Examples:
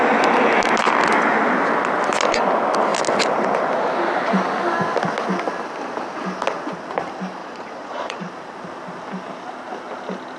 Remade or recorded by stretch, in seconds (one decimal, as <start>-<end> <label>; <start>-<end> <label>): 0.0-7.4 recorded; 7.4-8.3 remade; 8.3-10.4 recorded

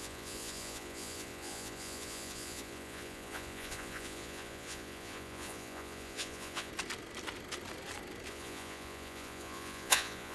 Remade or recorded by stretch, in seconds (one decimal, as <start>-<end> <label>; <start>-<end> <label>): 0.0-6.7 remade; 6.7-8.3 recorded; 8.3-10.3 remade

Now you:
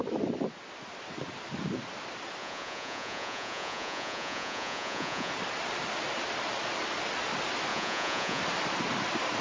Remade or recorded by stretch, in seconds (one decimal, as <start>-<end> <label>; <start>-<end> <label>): 0.0-2.4 recorded; 2.4-5.3 remade; 5.3-7.7 recorded; 7.7-8.4 remade; 8.4-9.4 recorded

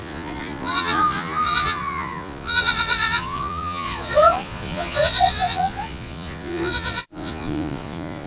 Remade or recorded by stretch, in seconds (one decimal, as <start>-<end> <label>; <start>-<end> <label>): 0.0-8.3 remade

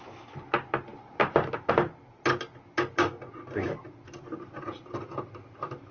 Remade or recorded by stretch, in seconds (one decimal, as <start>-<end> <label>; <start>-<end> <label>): 0.0-5.9 recorded